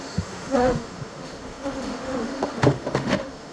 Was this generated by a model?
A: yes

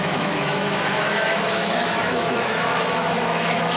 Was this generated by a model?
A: yes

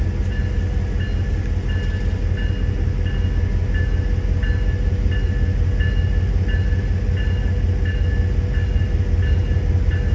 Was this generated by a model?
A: no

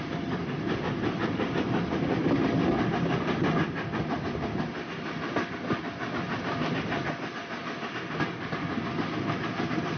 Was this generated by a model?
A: no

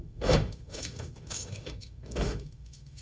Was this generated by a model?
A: yes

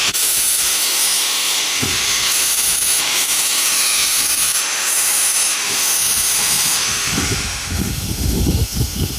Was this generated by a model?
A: yes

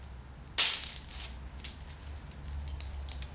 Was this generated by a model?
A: no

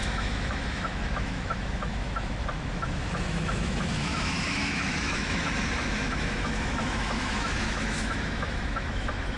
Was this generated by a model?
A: yes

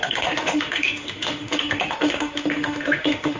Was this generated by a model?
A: yes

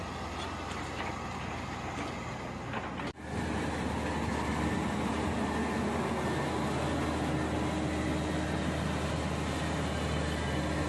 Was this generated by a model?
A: no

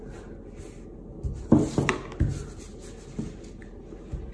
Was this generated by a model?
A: no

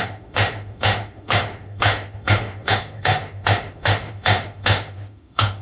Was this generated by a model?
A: yes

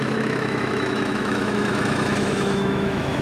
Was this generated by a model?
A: yes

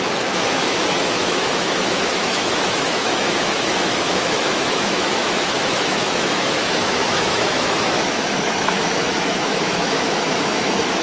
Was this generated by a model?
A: yes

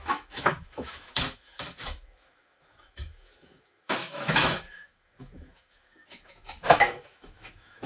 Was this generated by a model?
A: yes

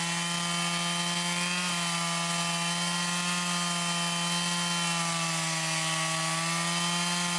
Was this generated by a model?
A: no